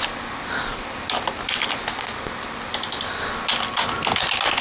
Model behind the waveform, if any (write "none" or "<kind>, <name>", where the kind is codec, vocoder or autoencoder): none